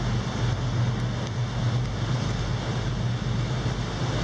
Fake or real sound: real